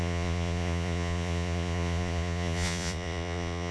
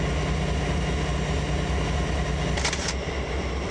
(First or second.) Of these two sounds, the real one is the second